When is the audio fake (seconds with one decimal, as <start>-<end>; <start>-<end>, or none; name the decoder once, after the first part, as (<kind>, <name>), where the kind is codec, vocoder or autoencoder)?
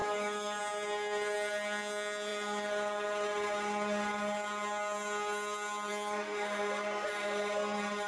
0.0-0.6 (autoencoder, DAC-VAE)